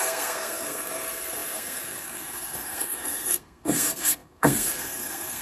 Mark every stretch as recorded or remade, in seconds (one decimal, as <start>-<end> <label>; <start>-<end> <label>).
0.0-5.4 remade